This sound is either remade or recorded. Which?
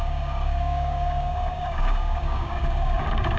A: remade